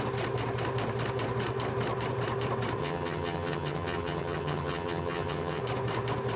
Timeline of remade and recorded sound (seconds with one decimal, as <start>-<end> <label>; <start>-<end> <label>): 0.0-2.8 recorded; 2.8-5.6 remade; 5.6-6.4 recorded